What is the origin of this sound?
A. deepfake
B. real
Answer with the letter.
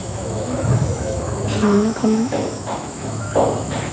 A